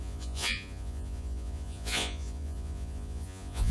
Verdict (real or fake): fake